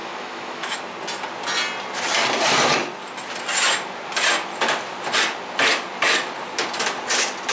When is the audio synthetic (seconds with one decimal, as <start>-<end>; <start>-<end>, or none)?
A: 0.0-0.8